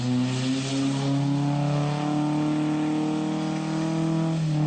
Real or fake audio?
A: real